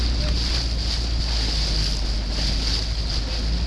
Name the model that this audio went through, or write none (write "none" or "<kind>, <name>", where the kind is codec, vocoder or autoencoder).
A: none